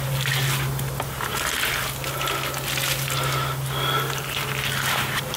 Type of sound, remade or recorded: recorded